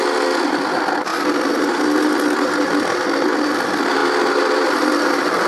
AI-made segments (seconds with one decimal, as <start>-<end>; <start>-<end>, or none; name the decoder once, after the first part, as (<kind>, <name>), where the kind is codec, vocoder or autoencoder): none